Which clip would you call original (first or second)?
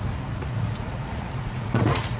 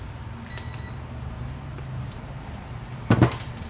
second